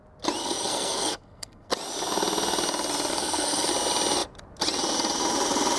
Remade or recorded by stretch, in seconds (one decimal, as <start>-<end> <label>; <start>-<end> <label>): 0.0-0.4 recorded; 0.4-1.7 remade; 1.7-3.1 recorded; 3.1-3.7 remade; 3.7-5.8 recorded

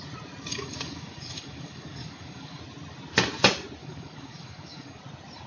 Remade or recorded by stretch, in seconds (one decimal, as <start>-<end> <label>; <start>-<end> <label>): 0.0-0.5 recorded; 0.5-2.6 remade; 2.6-3.8 recorded; 3.8-5.0 remade; 5.0-5.5 recorded

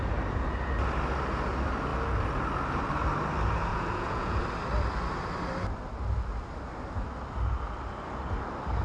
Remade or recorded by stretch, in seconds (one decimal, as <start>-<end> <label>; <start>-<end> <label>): 0.0-3.7 recorded; 3.7-4.4 remade; 4.4-8.8 recorded

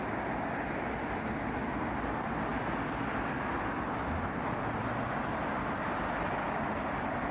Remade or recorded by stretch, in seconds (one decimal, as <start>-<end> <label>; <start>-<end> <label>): 0.0-7.3 recorded

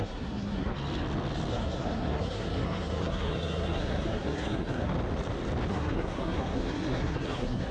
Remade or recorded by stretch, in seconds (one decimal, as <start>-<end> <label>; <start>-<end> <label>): 0.0-0.7 remade; 0.7-1.5 recorded; 1.5-4.9 remade; 4.9-5.7 recorded; 5.7-7.7 remade